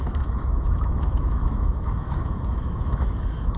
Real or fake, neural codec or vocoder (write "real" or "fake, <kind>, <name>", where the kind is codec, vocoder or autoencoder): fake, autoencoder, DAC-VAE